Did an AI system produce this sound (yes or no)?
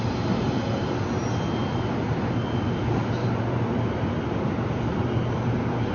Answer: no